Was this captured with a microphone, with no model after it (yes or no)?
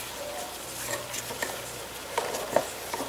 yes